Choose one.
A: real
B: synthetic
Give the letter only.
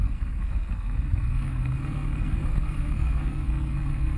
B